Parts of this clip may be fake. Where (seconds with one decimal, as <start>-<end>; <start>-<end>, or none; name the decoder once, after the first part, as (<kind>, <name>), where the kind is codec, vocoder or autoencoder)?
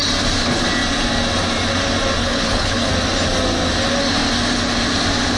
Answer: 2.2-2.9 (codec, HILCodec)